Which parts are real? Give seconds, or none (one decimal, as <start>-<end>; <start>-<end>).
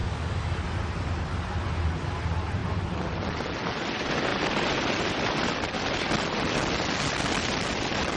0.6-8.2